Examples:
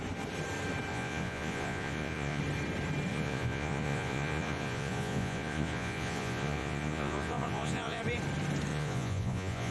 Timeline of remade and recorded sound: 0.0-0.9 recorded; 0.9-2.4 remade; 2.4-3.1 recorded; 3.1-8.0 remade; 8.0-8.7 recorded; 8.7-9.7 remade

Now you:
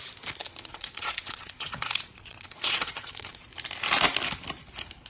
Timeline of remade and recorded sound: 0.0-0.4 recorded; 0.4-3.5 remade; 3.5-5.1 recorded